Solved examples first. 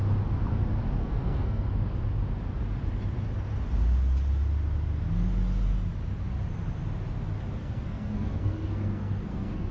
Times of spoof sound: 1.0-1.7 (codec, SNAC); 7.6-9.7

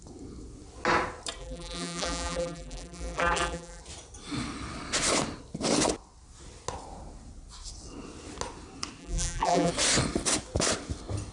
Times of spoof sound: 1.4-3.8 (vocoder, BigVGAN v2); 9.0-9.7

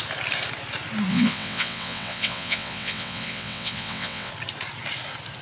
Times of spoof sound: 1.1-4.3 (vocoder, WaveNeXt)

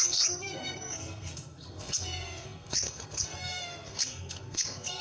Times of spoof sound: 0.0-5.0 (codec, SNAC)

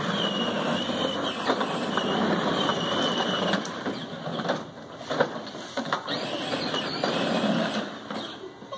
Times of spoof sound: none

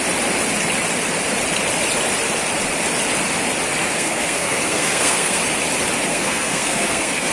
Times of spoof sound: 3.8-5.4 (codec, SNAC); 6.1-7.3

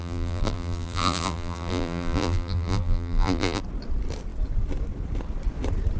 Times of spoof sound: 0.0-3.6 (vocoder, BigVGAN v2)